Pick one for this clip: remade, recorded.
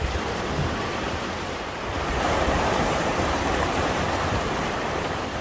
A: remade